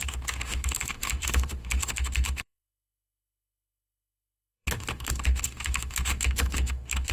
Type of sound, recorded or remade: remade